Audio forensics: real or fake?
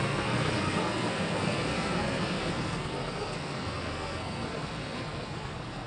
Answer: fake